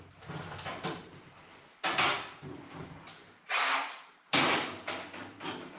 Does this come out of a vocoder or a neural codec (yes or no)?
no